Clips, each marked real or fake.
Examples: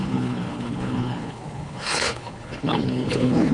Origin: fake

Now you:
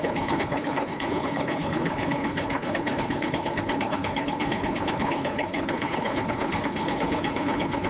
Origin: fake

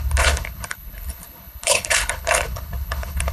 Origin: fake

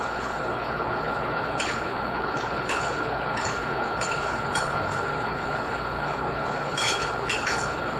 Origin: fake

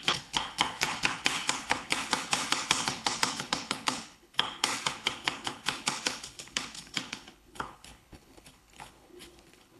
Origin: fake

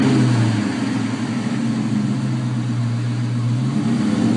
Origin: real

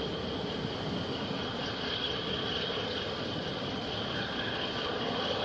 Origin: real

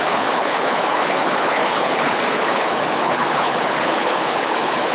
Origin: fake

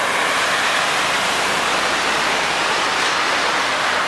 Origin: real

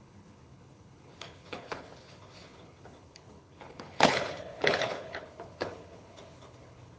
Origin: fake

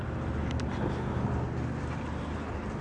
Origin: real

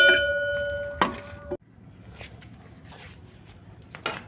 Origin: real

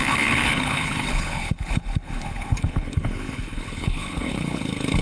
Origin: fake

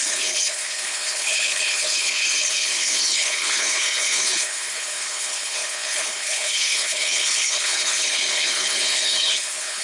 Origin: fake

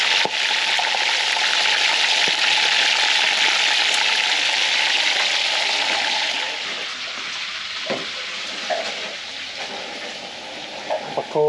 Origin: real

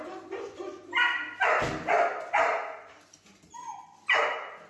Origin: real